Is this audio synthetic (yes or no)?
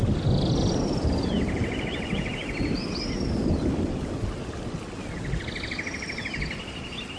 no